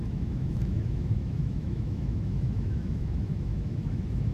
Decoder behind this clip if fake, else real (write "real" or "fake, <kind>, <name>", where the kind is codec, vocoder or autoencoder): fake, autoencoder, DAC-VAE